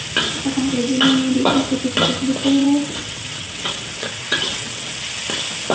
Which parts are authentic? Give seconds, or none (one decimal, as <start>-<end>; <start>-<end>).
0.0-2.6; 4.9-5.7